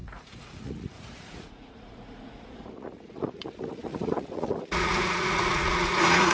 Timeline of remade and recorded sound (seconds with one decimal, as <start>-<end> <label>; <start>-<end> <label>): 0.0-6.3 remade

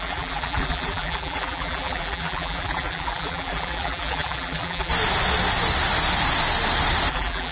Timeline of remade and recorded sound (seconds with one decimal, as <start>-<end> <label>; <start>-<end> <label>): 0.0-4.9 remade; 4.9-7.1 recorded; 7.1-7.5 remade

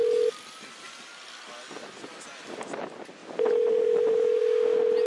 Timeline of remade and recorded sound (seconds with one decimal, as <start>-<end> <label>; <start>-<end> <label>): 0.0-0.8 remade; 0.8-3.2 recorded; 3.2-4.4 remade; 4.4-5.1 recorded

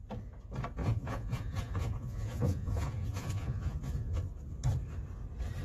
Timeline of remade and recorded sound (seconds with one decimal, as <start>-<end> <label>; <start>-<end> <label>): 0.0-0.8 recorded; 0.8-4.2 remade; 4.2-5.6 recorded

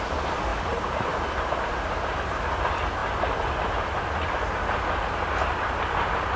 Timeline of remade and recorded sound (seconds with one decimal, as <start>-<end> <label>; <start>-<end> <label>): 0.0-0.5 recorded; 0.5-1.7 remade; 1.7-6.4 recorded

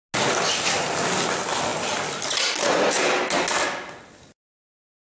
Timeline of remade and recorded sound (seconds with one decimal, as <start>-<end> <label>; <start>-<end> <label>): 0.0-5.1 recorded

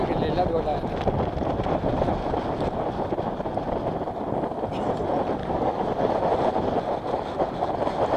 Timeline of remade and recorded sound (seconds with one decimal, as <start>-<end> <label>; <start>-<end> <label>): 0.0-5.4 recorded; 5.4-6.1 remade; 6.1-8.2 recorded